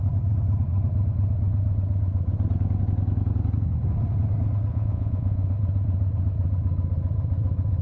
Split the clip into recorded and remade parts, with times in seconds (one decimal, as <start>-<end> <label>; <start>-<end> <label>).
0.0-4.7 recorded; 4.7-5.5 remade; 5.5-7.8 recorded